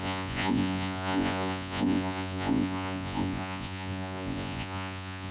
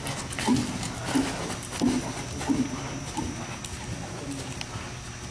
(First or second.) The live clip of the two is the second